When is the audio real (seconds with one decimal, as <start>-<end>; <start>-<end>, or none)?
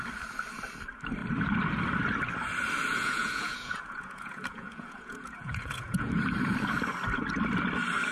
0.0-2.9; 6.1-8.1